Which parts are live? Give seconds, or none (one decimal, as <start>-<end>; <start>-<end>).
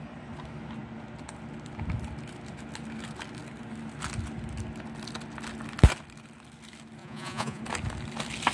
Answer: 0.0-7.0; 7.6-8.5